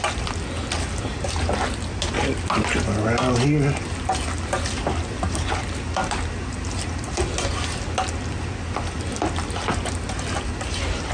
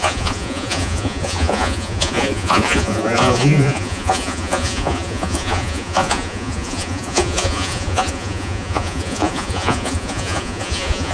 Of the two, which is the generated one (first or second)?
second